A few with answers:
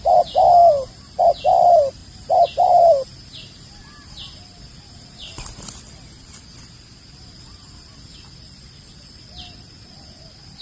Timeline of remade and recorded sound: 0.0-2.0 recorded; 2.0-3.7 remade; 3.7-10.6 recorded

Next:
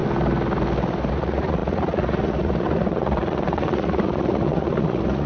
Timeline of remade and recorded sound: 0.0-1.1 recorded; 1.1-5.3 remade

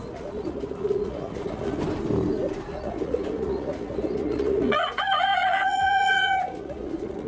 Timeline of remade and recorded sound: 0.0-1.8 remade; 1.8-2.7 recorded; 2.7-7.3 remade

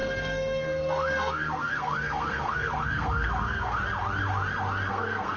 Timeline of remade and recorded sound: 0.0-3.8 remade; 3.8-4.9 recorded; 4.9-5.4 remade

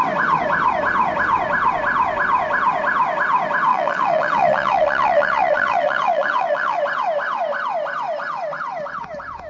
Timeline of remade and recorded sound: 0.0-3.7 recorded; 3.7-6.8 remade; 6.8-9.5 recorded